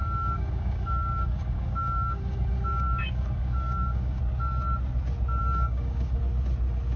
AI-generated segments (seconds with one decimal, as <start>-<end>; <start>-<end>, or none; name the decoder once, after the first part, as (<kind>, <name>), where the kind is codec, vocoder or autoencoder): 0.0-4.2 (codec, DAC); 5.4-6.2